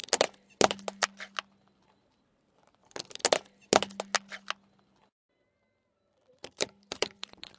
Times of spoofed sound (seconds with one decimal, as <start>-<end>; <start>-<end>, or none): 1.8-2.8; 6.3-7.6